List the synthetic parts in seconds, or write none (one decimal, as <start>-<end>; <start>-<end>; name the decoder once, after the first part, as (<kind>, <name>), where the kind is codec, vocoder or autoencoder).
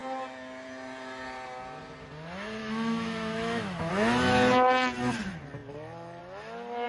2.6-3.9 (autoencoder, DAC-VAE)